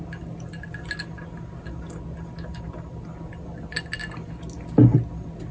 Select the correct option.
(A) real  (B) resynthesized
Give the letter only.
A